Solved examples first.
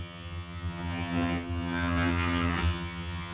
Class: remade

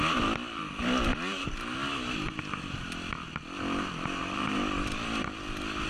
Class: recorded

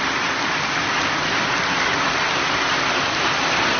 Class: recorded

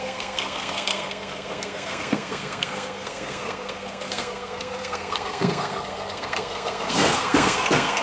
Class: remade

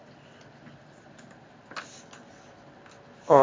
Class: recorded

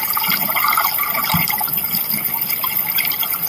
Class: recorded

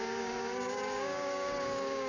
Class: remade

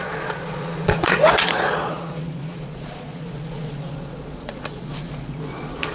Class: remade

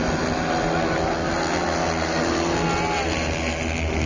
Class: recorded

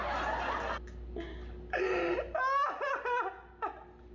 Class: recorded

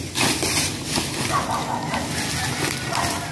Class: recorded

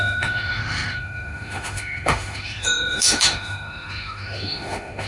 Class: remade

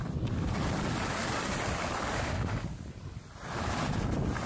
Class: recorded